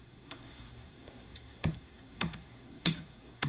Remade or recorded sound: remade